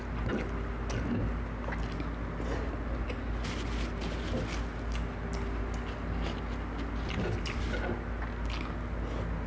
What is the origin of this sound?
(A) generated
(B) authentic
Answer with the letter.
B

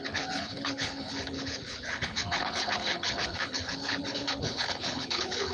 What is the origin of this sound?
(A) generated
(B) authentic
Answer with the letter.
A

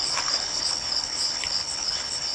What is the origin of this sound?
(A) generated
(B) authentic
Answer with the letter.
A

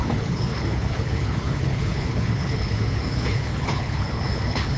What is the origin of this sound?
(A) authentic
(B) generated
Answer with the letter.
B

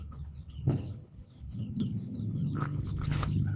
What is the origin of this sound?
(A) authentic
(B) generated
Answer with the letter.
B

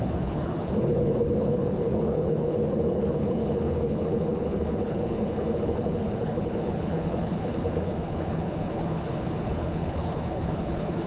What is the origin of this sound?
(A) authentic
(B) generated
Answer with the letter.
B